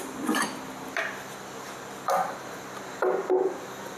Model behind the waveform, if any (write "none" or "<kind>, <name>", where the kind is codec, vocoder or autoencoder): none